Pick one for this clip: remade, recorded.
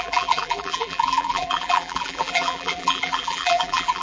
remade